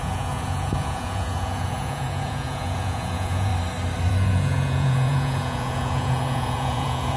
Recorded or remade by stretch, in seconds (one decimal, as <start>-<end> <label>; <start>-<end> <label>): 0.0-3.5 remade; 3.5-4.1 recorded; 4.1-7.2 remade